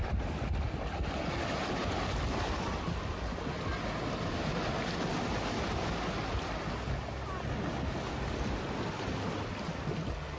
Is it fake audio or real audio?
real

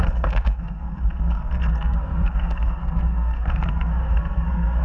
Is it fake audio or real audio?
fake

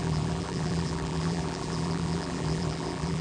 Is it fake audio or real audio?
fake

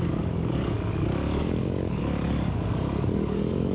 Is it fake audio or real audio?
fake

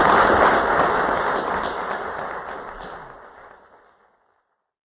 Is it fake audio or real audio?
real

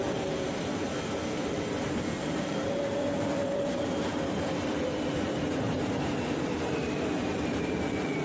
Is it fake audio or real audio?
fake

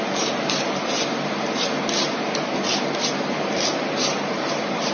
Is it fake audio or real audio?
real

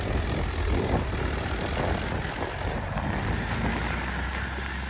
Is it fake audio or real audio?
real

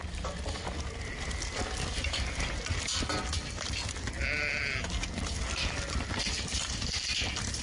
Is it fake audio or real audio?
real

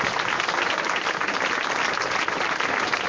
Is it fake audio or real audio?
real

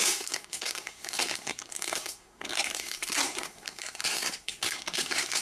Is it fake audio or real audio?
fake